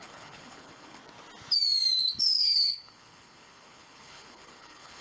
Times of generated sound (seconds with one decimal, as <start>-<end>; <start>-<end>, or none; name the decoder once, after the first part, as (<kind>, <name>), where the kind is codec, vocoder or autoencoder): 0.0-1.0 (codec, HILCodec); 2.2-5.0